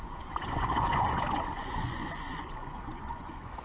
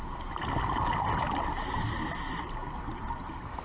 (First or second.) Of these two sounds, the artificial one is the first